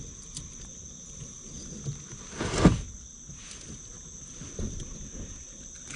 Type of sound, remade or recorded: recorded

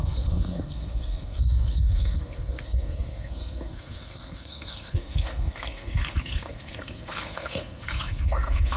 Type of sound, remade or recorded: remade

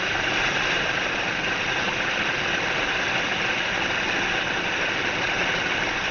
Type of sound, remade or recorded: recorded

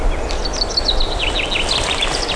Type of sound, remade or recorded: recorded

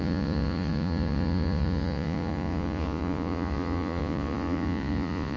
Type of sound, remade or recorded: remade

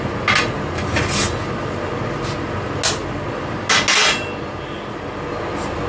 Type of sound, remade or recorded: recorded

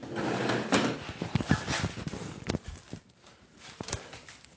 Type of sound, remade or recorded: recorded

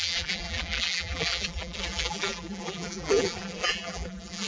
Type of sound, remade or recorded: remade